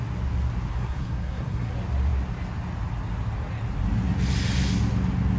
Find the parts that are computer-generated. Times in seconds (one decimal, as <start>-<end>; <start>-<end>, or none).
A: 0.7-1.7